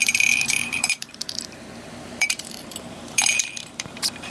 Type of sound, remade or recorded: remade